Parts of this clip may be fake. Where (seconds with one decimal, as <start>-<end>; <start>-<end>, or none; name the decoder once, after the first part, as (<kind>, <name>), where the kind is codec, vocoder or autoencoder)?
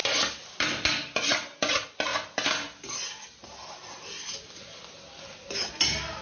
none